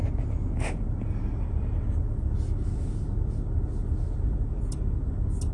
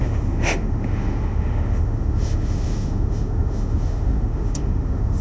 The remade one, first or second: second